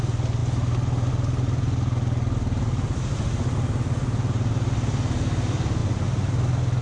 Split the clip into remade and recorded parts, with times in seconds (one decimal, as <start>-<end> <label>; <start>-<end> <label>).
0.0-6.8 recorded